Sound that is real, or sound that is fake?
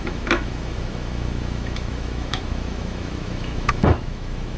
fake